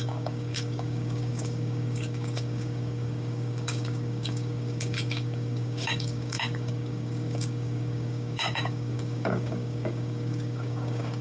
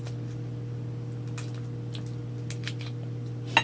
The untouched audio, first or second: second